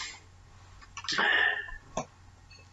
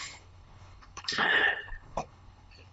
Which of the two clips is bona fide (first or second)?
first